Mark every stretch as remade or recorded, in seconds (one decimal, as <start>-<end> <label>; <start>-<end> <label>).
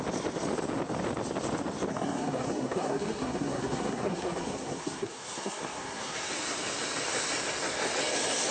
0.0-1.9 recorded; 1.9-6.3 remade; 6.3-8.5 recorded